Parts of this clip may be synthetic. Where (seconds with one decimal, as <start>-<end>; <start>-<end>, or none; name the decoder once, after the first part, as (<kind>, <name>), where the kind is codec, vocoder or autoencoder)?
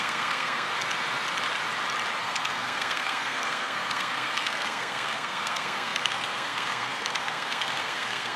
0.0-0.7 (codec, SNAC); 2.2-8.4